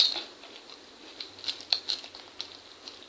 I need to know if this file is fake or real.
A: real